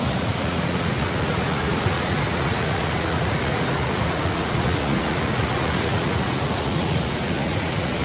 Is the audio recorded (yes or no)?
no